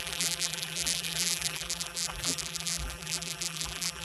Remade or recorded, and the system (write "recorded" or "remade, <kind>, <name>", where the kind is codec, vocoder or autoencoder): remade, vocoder, BigVGAN v2